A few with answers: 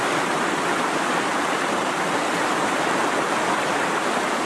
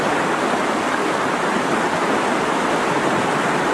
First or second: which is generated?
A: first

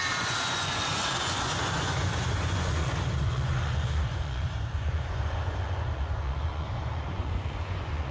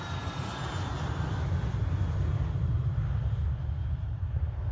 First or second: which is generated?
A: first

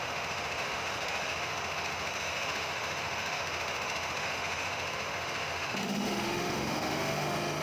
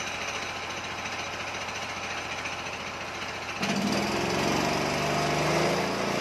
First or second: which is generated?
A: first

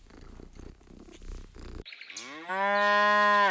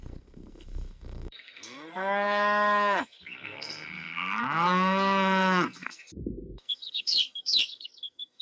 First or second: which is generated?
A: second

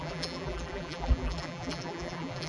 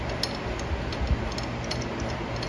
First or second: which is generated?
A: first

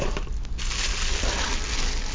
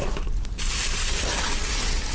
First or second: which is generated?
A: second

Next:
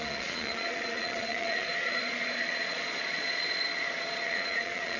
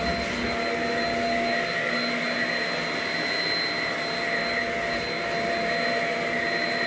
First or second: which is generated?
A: first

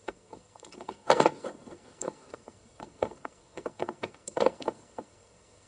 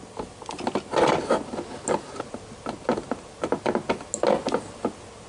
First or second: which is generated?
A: first